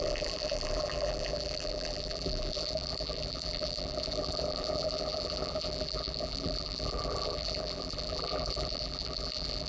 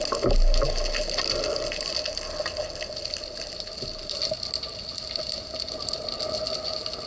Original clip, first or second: second